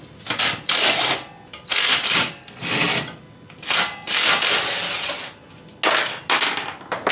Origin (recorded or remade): recorded